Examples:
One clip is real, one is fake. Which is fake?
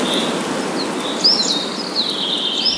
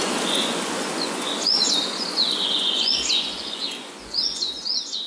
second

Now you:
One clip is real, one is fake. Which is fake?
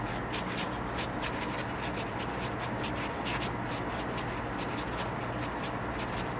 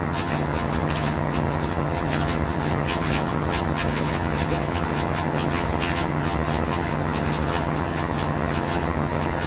second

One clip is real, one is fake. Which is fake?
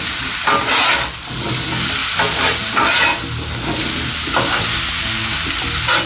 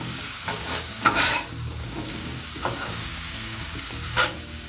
second